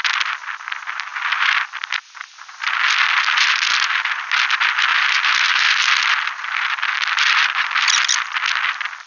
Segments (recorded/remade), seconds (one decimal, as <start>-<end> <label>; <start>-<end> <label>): 0.0-9.1 recorded